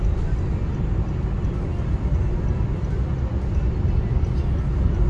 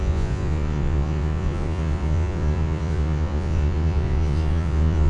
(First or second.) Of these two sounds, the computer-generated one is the second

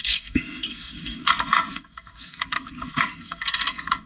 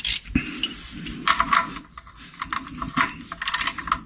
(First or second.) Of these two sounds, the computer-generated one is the first